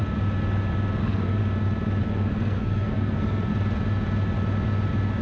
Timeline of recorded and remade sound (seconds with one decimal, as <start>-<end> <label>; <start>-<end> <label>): 0.0-1.0 recorded; 1.0-1.4 remade; 1.4-2.0 recorded; 2.0-3.5 remade; 3.5-5.2 recorded